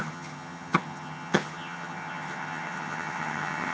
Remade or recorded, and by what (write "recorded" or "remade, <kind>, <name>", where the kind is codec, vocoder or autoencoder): remade, vocoder, HiFi-GAN